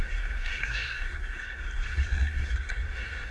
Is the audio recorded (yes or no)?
no